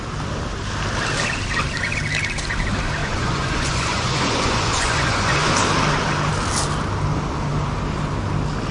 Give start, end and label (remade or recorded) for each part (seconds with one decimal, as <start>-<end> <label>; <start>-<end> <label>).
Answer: 0.0-3.0 recorded; 3.0-5.5 remade; 5.5-8.7 recorded